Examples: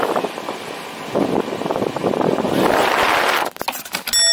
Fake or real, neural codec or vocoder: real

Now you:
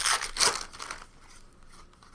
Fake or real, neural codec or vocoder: real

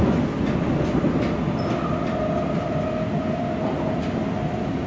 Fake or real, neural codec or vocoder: real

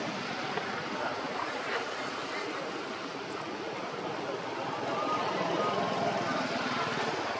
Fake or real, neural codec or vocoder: real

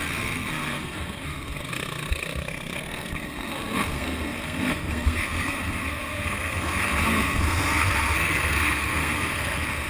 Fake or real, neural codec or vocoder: fake, codec, SNAC